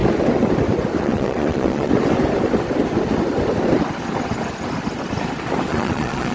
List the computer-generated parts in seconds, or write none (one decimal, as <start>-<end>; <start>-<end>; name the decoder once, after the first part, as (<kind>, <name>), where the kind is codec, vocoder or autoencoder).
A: 1.0-1.9 (vocoder, Vocos); 5.7-6.3